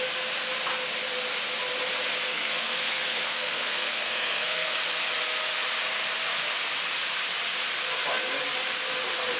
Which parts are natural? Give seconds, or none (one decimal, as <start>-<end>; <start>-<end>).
0.0-2.3; 4.8-9.4